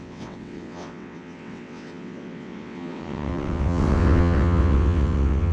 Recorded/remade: remade